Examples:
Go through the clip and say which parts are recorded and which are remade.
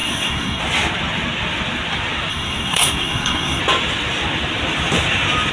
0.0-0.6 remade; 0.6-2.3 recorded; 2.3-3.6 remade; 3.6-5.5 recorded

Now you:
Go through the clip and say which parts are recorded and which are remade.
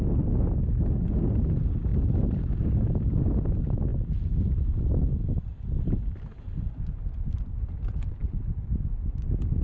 0.0-1.9 recorded; 1.9-2.6 remade; 2.6-8.2 recorded; 8.2-9.2 remade; 9.2-9.6 recorded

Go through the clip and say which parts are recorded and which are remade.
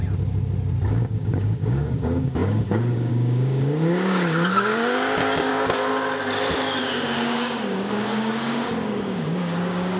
0.0-0.9 recorded; 0.9-5.5 remade; 5.5-6.8 recorded; 6.8-10.0 remade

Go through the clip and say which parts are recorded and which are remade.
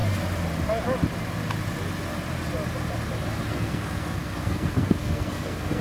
0.0-3.5 recorded; 3.5-5.8 remade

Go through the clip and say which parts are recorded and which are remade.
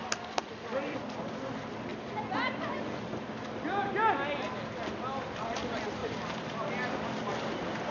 0.0-6.0 recorded; 6.0-6.7 remade; 6.7-7.9 recorded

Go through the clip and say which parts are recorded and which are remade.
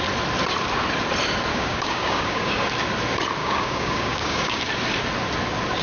0.0-1.5 recorded; 1.5-2.7 remade; 2.7-3.4 recorded; 3.4-4.6 remade; 4.6-5.8 recorded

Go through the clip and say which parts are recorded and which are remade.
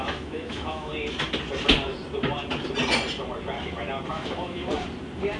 0.0-0.9 remade; 0.9-4.1 recorded; 4.1-4.6 remade; 4.6-5.4 recorded